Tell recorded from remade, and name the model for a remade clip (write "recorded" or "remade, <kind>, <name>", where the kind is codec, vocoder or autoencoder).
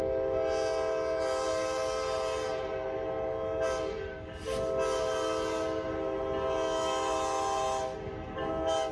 recorded